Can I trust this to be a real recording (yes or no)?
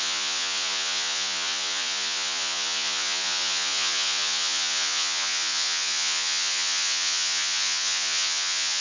no